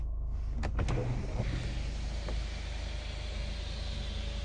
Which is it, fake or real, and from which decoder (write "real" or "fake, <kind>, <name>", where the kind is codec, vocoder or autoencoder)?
real